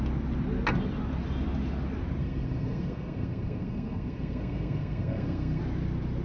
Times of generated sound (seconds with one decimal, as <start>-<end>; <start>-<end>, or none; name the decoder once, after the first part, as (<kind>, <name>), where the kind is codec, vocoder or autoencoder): 2.2-5.6 (codec, SNAC)